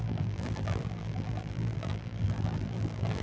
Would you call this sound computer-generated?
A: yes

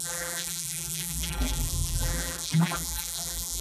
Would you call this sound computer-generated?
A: yes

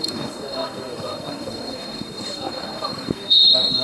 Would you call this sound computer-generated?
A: yes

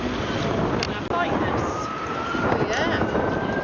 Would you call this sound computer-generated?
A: no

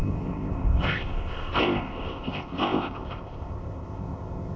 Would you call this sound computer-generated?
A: yes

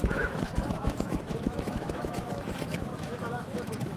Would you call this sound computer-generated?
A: yes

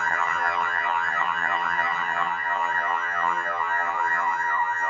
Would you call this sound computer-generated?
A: yes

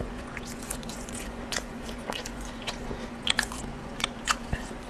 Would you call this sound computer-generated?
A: yes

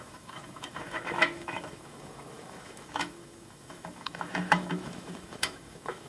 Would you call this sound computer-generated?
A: yes